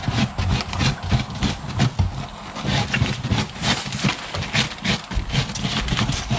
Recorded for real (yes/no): yes